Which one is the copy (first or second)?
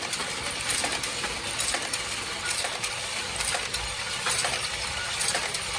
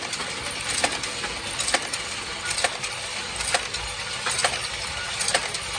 first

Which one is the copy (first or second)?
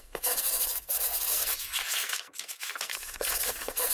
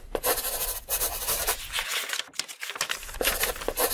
first